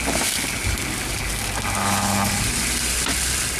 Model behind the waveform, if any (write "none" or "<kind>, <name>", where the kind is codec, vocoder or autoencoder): none